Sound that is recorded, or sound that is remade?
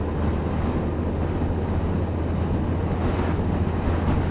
recorded